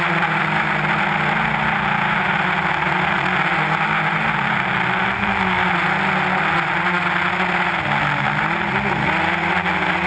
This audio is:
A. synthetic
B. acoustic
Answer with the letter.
B